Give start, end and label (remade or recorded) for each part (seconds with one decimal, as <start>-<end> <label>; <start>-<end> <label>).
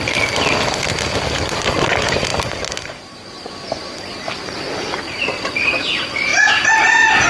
0.0-7.3 recorded